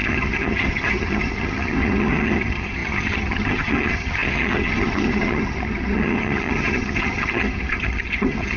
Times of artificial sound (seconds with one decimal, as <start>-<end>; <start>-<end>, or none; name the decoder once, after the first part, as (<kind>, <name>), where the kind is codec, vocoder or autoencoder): 0.0-8.6 (vocoder, HiFi-GAN)